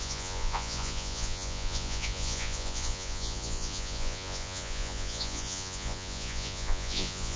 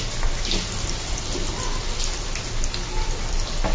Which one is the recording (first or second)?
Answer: second